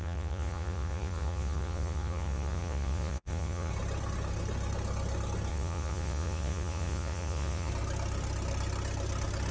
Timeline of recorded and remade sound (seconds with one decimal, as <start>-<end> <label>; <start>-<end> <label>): 0.0-3.7 remade; 3.7-5.5 recorded; 5.5-7.7 remade; 7.7-9.5 recorded

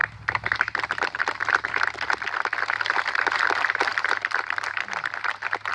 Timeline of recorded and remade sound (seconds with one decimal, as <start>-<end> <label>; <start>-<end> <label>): 0.0-5.7 recorded

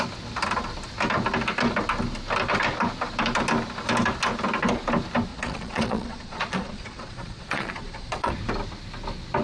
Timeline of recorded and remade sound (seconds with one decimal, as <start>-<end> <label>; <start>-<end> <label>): 0.0-5.3 recorded; 5.3-8.3 remade; 8.3-9.4 recorded

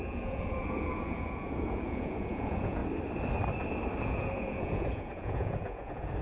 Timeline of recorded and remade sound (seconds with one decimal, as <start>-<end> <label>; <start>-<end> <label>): 0.0-2.8 remade; 2.8-4.0 recorded; 4.0-6.2 remade

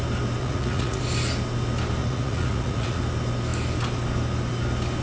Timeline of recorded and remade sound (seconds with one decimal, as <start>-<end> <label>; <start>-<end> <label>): 0.0-0.4 recorded; 0.4-1.0 remade; 1.0-2.0 recorded; 2.0-3.0 remade; 3.0-5.0 recorded

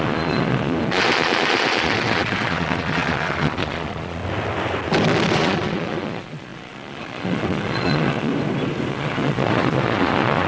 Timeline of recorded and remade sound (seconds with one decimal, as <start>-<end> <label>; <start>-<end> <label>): 0.0-4.2 remade; 4.2-5.3 recorded; 5.3-8.3 remade; 8.3-8.9 recorded; 8.9-10.5 remade

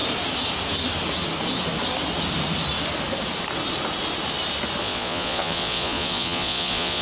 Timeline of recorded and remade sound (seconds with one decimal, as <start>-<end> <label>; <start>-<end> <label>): 0.0-4.8 recorded; 4.8-7.0 remade